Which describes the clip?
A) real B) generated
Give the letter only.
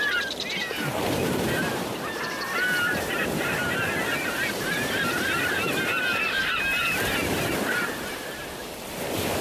B